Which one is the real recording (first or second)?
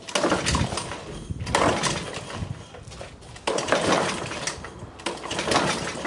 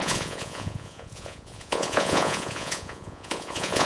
first